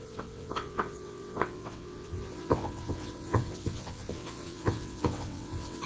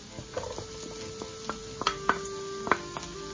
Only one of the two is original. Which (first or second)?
second